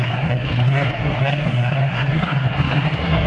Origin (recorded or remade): remade